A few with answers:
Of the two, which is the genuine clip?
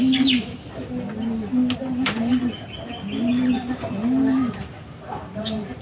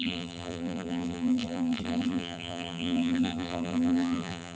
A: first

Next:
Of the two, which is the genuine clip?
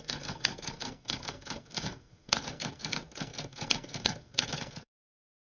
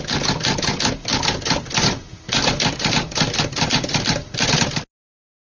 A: second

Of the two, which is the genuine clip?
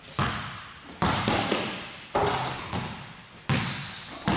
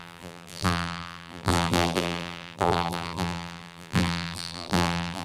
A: first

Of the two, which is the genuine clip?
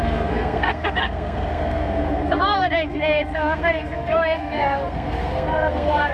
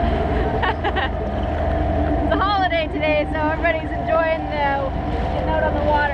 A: second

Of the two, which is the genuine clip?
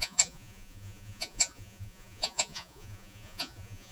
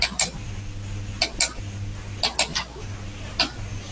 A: second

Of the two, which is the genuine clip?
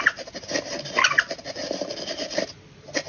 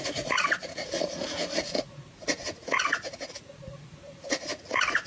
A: first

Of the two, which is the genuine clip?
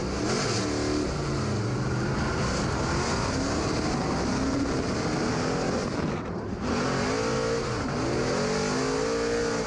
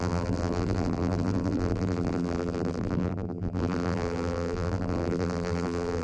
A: first